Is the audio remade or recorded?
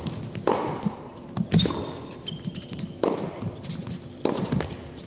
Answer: recorded